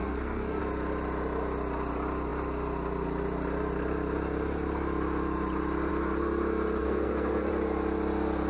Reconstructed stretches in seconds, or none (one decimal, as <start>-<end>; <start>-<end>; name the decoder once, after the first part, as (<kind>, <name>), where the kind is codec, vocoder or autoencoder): 0.0-0.6 (codec, SNAC); 6.8-7.5